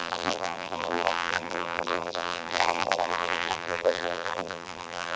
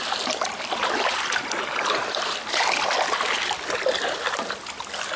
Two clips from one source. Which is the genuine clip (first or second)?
second